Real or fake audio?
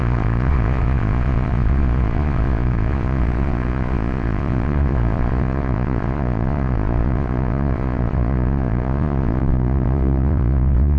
fake